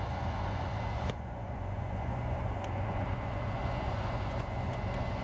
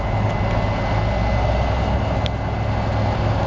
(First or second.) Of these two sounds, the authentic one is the second